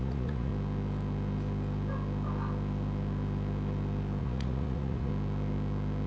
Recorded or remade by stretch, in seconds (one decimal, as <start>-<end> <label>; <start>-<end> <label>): 0.0-0.5 remade; 0.5-4.2 recorded; 4.2-5.1 remade; 5.1-6.1 recorded